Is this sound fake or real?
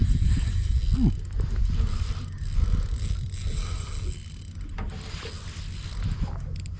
real